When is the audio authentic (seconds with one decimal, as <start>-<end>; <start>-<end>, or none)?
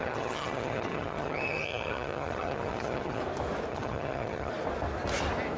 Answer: 3.2-3.7; 4.5-5.6